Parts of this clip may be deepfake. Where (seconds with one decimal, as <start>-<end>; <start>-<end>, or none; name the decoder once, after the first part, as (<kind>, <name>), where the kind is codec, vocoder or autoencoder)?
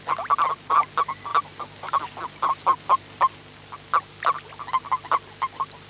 none